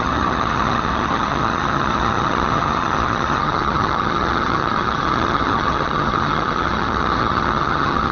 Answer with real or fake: fake